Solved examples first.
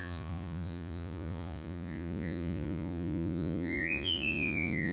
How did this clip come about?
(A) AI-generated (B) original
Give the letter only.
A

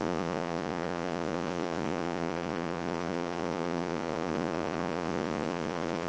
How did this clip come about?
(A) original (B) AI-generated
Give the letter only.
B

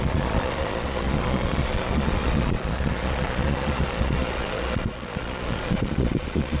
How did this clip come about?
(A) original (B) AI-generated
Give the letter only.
B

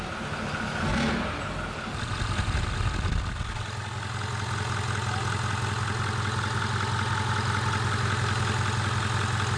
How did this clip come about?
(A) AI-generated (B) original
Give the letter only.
B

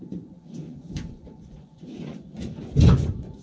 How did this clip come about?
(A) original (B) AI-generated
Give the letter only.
B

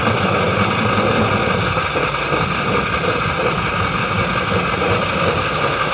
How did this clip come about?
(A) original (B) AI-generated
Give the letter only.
A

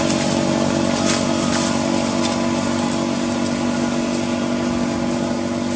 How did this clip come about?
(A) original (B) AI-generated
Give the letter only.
A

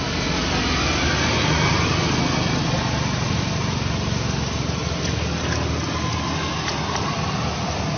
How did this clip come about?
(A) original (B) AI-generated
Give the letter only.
A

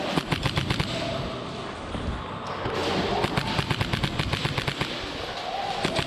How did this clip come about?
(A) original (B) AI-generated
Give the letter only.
A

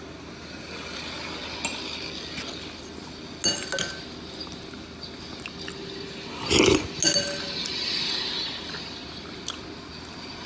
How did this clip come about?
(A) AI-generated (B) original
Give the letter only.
B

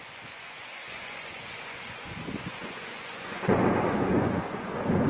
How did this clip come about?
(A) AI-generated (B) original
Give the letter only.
A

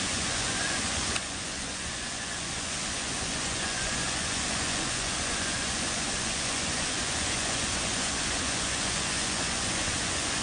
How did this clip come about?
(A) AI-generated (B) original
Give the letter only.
A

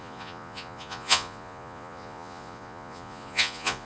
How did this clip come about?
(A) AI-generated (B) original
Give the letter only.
A